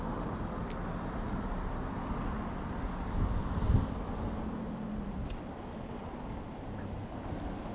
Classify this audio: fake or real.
real